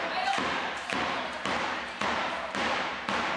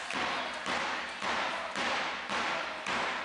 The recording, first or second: second